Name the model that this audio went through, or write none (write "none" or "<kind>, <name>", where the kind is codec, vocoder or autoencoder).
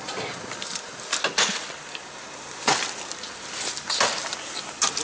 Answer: none